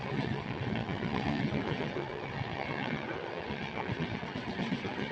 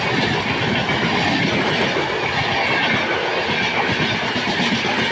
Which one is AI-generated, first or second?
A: first